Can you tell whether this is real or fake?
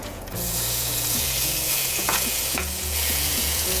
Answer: fake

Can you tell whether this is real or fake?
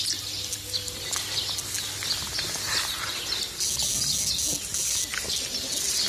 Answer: real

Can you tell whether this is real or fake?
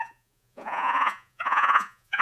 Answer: fake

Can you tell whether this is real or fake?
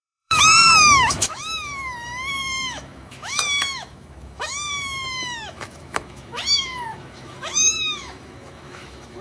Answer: fake